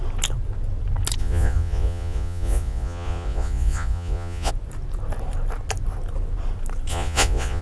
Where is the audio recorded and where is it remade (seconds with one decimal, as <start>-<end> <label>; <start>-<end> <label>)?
0.0-1.2 recorded; 1.2-4.5 remade; 4.5-6.9 recorded; 6.9-7.6 remade